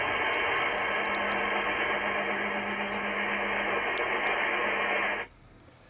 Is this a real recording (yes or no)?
yes